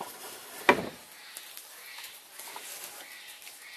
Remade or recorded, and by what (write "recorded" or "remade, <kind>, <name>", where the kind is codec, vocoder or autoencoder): recorded